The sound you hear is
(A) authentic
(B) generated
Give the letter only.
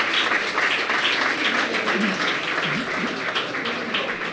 A